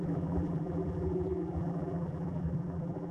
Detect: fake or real fake